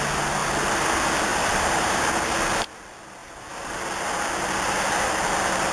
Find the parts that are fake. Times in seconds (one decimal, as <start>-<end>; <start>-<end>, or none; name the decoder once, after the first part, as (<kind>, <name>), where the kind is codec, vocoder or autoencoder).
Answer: 0.4-0.9 (vocoder, BigVGAN v2); 1.3-2.1